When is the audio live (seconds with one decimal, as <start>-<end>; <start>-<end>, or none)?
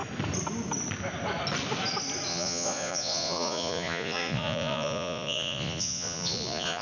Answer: 0.0-2.3